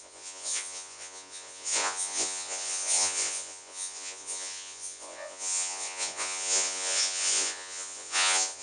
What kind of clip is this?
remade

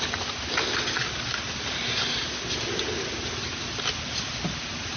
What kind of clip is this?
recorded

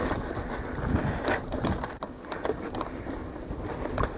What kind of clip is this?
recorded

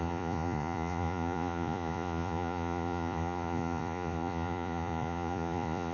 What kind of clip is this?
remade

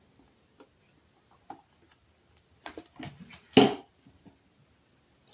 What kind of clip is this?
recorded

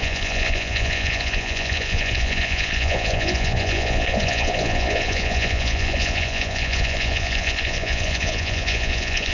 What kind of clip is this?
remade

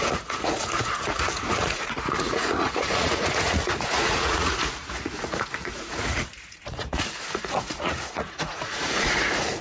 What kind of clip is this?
remade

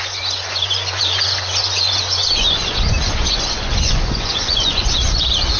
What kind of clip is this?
remade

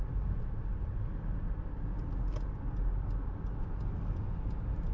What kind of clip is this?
recorded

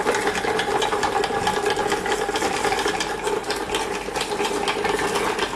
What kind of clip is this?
recorded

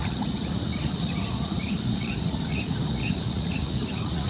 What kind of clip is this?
remade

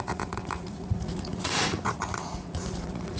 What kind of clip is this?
remade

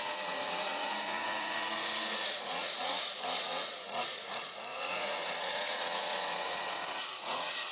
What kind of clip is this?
remade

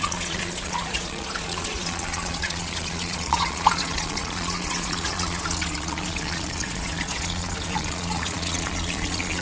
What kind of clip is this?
remade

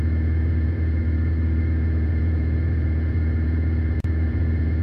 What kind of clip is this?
remade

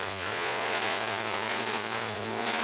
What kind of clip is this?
remade